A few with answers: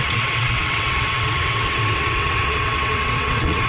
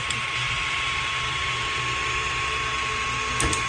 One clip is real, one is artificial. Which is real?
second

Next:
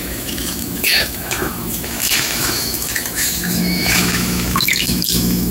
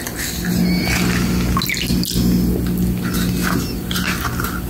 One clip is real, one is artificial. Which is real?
second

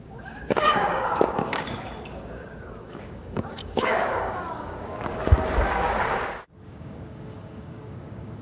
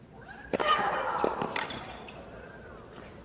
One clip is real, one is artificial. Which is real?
second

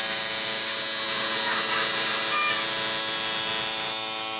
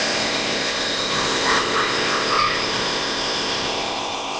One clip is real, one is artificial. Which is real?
first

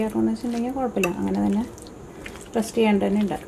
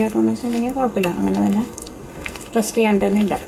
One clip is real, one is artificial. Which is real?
first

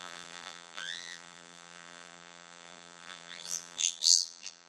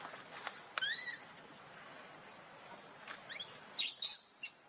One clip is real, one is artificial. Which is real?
second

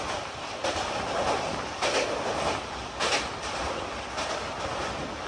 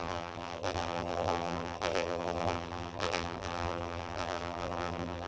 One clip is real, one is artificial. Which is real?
first